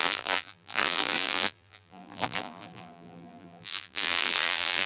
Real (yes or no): no